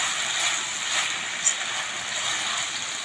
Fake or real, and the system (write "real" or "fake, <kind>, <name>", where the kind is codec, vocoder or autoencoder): real